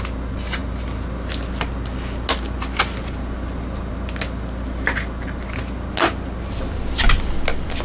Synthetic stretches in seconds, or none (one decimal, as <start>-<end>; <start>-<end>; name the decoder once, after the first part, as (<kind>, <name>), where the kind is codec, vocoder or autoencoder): none